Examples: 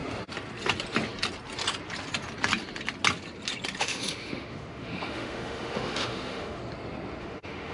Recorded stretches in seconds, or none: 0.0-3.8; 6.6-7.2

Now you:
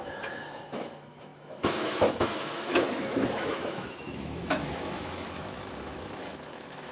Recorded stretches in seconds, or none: none

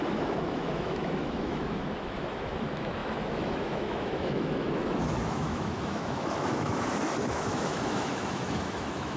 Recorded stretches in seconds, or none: none

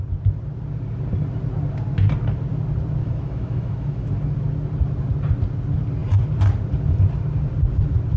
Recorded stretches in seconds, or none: 0.0-3.0; 4.1-8.2